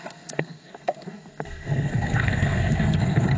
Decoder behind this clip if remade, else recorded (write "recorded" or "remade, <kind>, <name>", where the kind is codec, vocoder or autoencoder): remade, codec, SNAC